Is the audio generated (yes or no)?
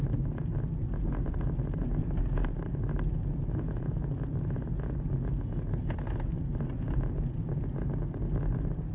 no